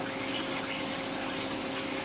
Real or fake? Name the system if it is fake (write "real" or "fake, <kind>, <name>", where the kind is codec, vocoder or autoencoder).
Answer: real